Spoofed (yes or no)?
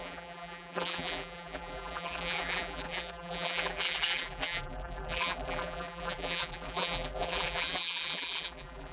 yes